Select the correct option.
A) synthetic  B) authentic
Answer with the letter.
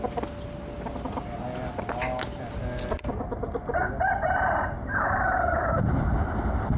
B